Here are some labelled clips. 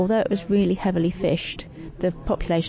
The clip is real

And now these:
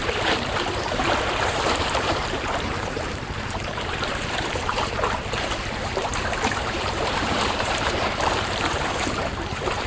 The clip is fake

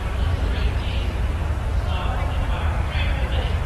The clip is fake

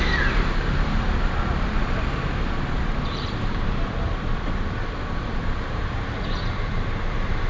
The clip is fake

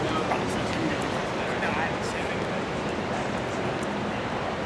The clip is real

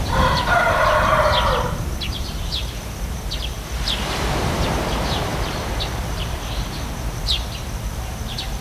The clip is fake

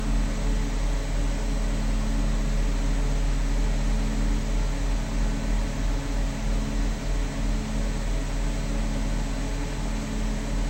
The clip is real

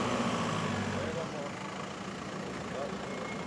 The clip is real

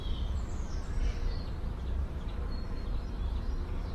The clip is fake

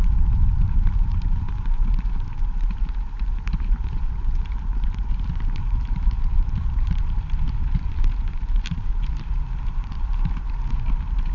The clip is fake